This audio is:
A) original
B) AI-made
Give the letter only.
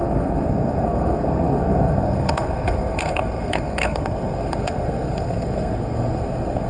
B